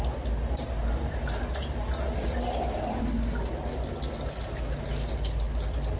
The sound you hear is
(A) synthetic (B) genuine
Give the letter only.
B